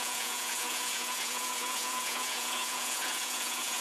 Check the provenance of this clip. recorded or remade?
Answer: remade